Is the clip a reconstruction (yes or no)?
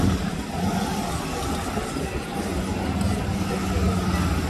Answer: no